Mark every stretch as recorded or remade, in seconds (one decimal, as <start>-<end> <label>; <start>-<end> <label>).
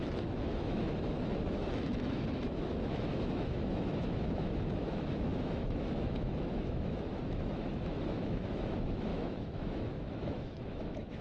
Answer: 0.0-11.2 remade